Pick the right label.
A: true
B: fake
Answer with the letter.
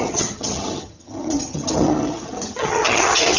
B